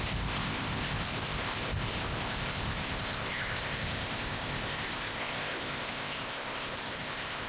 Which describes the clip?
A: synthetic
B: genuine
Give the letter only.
A